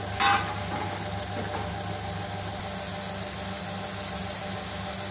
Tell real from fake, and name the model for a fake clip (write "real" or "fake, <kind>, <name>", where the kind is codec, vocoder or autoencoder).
real